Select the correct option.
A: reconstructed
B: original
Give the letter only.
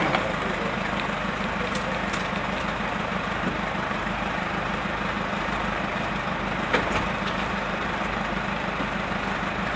A